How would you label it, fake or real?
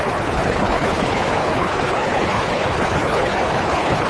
fake